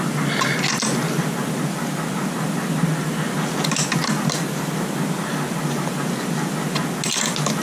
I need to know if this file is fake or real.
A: real